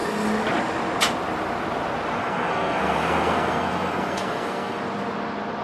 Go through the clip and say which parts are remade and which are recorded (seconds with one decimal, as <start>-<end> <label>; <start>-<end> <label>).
0.0-2.2 recorded; 2.2-4.8 remade; 4.8-5.6 recorded